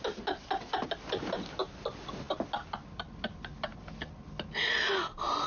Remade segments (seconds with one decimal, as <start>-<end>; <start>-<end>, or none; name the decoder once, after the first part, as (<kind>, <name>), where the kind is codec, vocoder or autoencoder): none